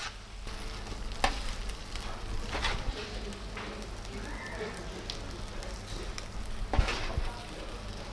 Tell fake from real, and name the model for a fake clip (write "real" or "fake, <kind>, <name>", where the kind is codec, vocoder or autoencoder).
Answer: real